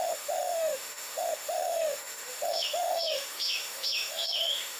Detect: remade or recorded remade